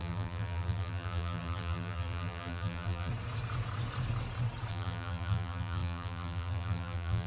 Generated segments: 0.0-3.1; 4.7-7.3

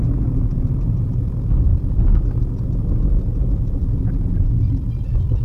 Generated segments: none